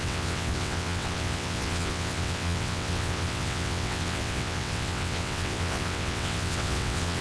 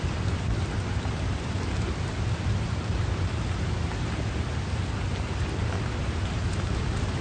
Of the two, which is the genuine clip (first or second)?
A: second